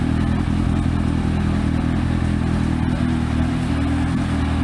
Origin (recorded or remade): recorded